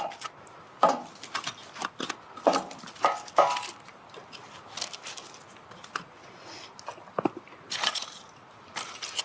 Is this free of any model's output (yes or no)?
yes